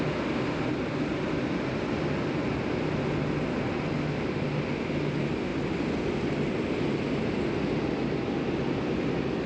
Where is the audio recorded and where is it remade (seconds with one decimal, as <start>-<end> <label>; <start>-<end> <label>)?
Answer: 0.0-9.5 recorded